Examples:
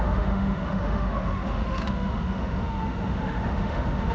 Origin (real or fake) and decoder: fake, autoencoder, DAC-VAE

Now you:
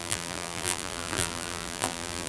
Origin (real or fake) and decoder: fake, vocoder, BigVGAN v2